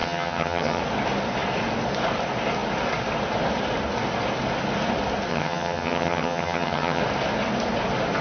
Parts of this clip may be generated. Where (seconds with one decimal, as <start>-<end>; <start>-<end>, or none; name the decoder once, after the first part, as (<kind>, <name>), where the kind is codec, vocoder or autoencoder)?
0.0-0.8 (vocoder, HiFi-GAN); 5.3-7.0

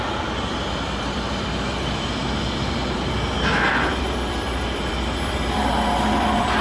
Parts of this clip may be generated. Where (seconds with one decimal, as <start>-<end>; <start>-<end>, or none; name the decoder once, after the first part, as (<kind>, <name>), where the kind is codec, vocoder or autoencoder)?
0.0-6.6 (vocoder, BigVGAN v2)

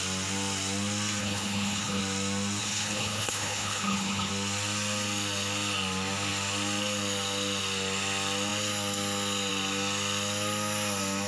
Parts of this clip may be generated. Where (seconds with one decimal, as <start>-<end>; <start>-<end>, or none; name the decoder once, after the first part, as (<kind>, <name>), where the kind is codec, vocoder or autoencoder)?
1.2-2.0 (codec, HILCodec); 2.6-4.3

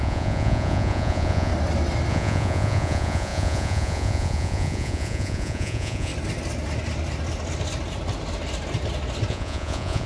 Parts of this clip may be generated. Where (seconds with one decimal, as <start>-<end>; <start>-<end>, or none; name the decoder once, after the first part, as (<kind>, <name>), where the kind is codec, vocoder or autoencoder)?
0.0-1.5 (vocoder, Vocos); 2.1-6.1; 9.3-10.1